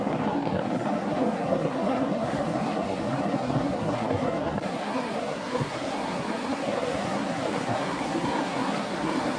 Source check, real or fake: fake